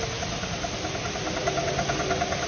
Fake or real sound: real